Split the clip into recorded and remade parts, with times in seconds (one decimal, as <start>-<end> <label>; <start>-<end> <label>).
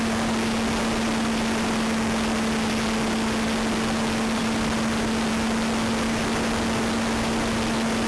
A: 0.0-8.1 recorded